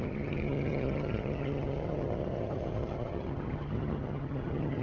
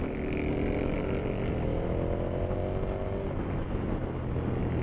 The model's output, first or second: first